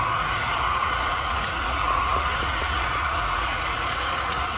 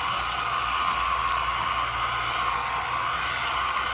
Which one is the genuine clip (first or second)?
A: second